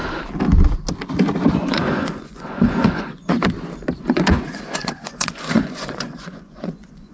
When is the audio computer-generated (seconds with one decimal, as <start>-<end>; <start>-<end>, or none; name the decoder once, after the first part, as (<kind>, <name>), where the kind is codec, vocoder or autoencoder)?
1.5-3.4 (vocoder, Vocos); 4.0-7.1